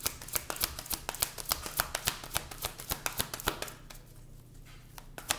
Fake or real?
real